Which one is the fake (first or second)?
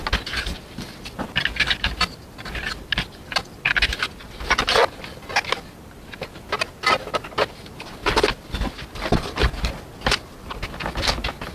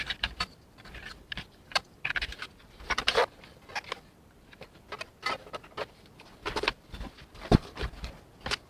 second